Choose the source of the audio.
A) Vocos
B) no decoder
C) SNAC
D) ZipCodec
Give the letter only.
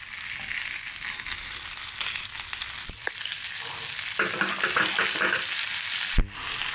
B